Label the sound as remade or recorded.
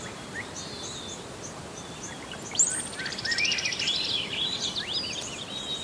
remade